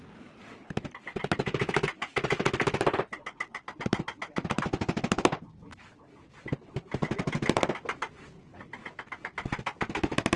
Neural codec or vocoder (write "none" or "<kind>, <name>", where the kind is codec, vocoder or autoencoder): none